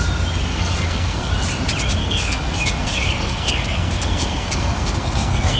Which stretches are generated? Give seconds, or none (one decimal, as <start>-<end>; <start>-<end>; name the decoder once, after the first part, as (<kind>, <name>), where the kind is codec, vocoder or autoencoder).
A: 0.5-1.3 (codec, SNAC); 2.0-5.6